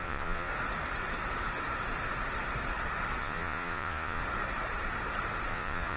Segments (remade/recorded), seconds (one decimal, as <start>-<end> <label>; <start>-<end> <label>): 0.0-0.5 remade; 0.5-3.2 recorded; 3.2-4.2 remade; 4.2-5.5 recorded; 5.5-6.0 remade